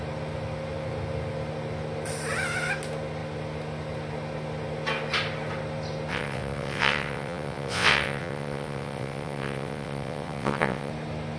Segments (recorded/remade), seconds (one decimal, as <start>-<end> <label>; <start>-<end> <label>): 0.0-6.1 recorded; 6.1-10.9 remade; 10.9-11.4 recorded